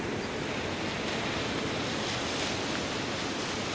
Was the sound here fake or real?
real